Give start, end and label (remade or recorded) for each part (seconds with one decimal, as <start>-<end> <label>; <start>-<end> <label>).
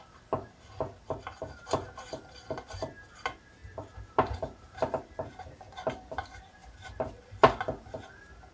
0.0-3.6 recorded; 3.6-5.0 remade; 5.0-8.5 recorded